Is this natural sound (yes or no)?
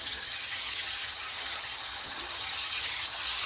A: no